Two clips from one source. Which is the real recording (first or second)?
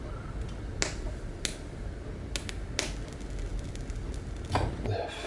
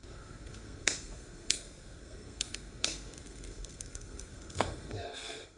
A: first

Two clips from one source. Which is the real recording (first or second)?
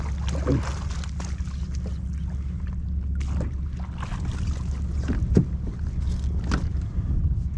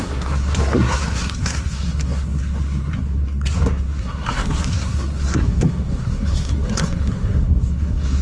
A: first